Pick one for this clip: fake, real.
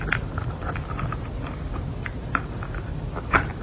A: real